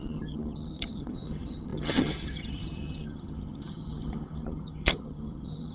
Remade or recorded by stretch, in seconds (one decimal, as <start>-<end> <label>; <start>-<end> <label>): 0.0-5.7 remade